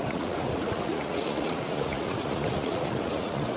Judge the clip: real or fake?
fake